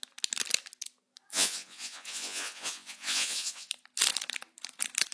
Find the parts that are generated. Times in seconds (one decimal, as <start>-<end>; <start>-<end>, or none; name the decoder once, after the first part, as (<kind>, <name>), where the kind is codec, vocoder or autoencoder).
1.3-3.7 (vocoder, Vocos)